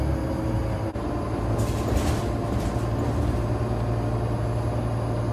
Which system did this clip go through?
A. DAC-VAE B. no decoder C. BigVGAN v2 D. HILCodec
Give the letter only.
B